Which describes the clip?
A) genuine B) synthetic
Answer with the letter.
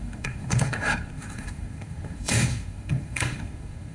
B